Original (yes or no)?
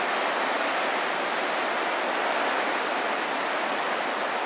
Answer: yes